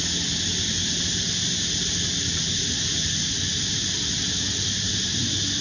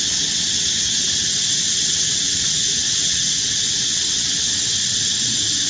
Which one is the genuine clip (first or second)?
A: first